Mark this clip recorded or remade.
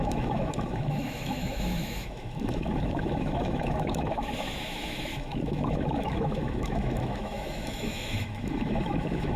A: remade